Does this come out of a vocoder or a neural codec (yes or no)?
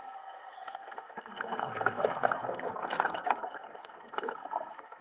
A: yes